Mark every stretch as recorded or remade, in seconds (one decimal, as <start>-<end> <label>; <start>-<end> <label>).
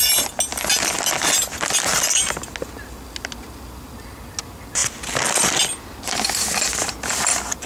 0.0-7.7 recorded